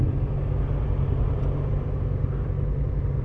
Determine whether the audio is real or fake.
real